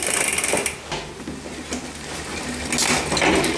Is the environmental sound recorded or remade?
recorded